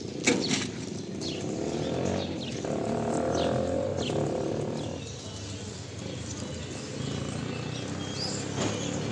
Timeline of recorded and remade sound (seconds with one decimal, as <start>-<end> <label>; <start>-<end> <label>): 0.0-9.1 recorded